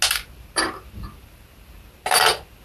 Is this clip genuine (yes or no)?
yes